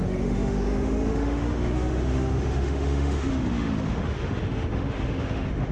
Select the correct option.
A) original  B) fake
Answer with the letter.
B